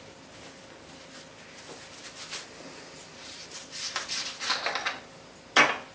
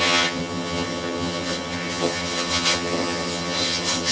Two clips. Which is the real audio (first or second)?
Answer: first